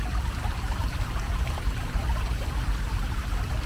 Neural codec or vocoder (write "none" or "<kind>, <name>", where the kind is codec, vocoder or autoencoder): vocoder, BigVGAN v2